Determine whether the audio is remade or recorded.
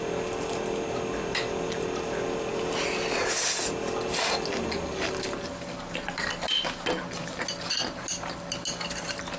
recorded